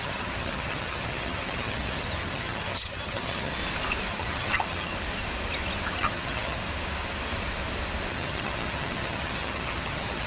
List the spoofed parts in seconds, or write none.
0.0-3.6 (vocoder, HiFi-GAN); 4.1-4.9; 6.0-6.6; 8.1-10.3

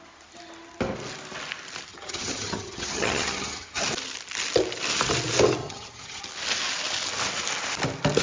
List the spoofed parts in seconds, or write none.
1.9-3.8 (vocoder, HiFi-GAN); 5.6-6.2

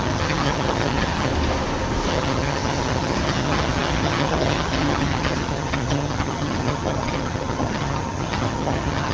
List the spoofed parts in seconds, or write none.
0.0-1.3 (vocoder, HiFi-GAN); 2.1-9.1

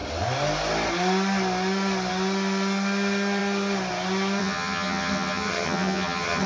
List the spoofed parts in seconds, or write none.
4.4-6.5 (vocoder, HiFi-GAN)

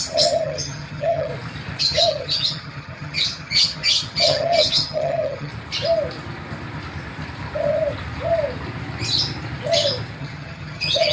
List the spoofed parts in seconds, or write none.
0.0-1.3 (vocoder, HiFi-GAN); 1.8-5.5; 10.2-11.1